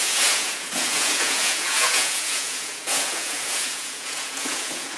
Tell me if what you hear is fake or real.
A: fake